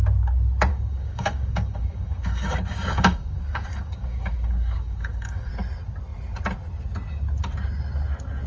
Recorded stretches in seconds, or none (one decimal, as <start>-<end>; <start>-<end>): 0.0-0.7; 5.5-8.5